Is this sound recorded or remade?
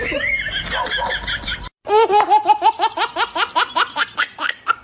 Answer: recorded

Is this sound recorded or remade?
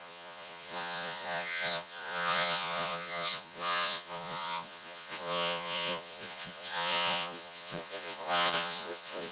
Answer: remade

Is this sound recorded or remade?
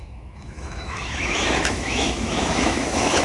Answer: remade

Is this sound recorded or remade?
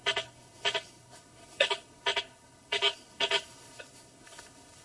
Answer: remade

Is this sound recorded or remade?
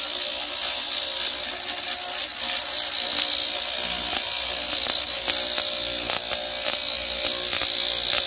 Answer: recorded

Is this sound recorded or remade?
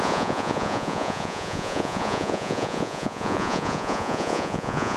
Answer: remade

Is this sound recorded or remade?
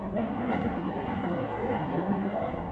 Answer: remade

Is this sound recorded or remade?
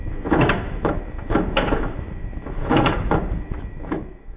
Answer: remade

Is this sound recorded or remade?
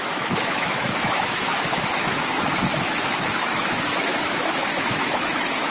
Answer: remade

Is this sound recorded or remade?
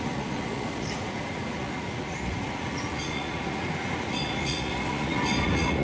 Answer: remade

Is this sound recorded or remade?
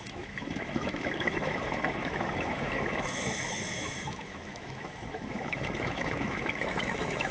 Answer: remade